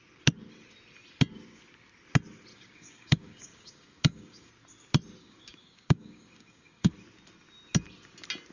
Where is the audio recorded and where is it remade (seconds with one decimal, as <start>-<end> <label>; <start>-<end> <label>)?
0.0-2.5 recorded; 2.5-4.5 remade; 4.5-5.2 recorded; 5.2-6.9 remade; 6.9-8.5 recorded